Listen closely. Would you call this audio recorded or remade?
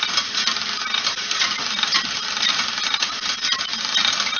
recorded